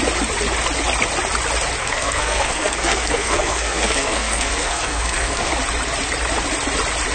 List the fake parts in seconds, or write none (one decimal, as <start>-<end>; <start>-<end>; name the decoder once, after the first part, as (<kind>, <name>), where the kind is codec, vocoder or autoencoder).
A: 1.8-5.5 (codec, SNAC)